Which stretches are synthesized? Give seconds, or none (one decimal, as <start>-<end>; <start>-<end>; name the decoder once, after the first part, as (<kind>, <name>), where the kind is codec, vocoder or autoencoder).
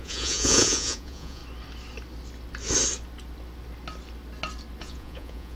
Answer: 0.0-1.4 (vocoder, Vocos); 4.8-5.6